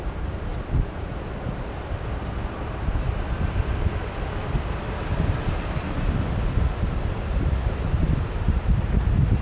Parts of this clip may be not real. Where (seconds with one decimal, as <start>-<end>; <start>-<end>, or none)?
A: 0.0-9.4